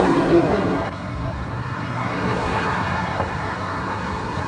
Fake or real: fake